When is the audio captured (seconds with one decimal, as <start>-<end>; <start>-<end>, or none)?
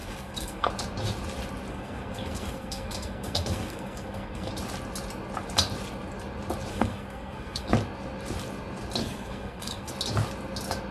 0.7-1.7; 4.5-6.7; 7.7-9.0; 9.9-10.9